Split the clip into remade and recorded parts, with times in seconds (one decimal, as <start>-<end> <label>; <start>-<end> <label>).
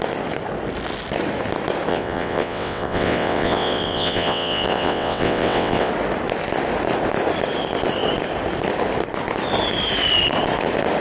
0.0-1.9 recorded; 1.9-5.9 remade; 5.9-11.0 recorded